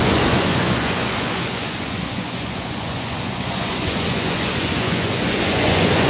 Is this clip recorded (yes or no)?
no